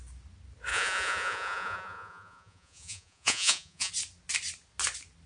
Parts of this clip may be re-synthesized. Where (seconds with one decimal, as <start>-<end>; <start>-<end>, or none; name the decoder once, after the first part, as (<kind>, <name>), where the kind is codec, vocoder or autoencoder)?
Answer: 0.7-3.9 (vocoder, Vocos)